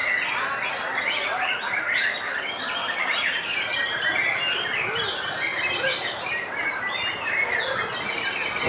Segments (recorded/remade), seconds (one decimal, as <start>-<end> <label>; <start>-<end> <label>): 0.0-2.8 recorded; 2.8-4.2 remade; 4.2-5.5 recorded; 5.5-6.9 remade; 6.9-8.7 recorded